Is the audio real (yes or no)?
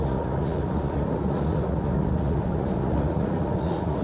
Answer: no